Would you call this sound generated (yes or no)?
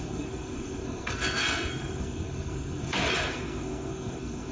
yes